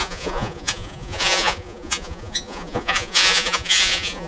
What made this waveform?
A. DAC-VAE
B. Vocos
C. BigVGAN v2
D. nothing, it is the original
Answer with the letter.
B